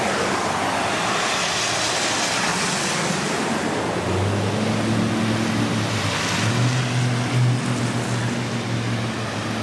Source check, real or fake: real